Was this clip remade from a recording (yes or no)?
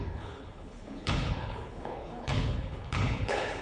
yes